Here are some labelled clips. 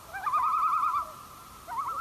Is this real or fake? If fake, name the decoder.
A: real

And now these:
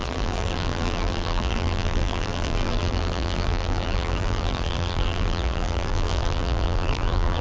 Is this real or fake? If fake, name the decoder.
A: fake, vocoder, BigVGAN v2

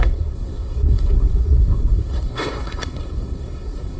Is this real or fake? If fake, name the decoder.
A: fake, codec, SNAC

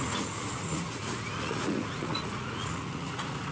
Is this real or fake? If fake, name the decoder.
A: fake, vocoder, Vocos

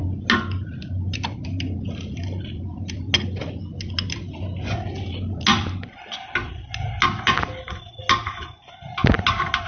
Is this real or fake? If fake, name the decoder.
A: real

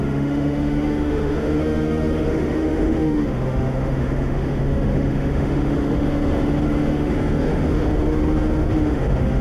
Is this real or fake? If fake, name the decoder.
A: fake, autoencoder, DAC-VAE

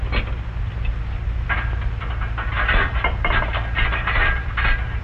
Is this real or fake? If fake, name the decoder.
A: real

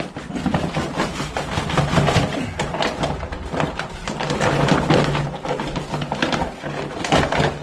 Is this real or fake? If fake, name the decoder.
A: real